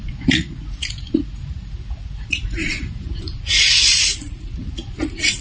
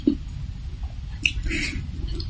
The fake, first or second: first